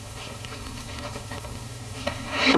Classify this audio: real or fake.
fake